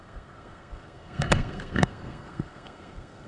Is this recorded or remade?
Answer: remade